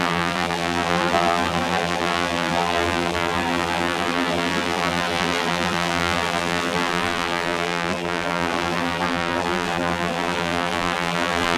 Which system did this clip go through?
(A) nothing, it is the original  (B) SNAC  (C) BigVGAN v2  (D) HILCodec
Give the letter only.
C